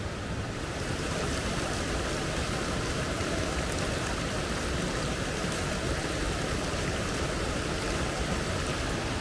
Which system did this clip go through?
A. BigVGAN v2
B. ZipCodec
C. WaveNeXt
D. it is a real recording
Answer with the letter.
A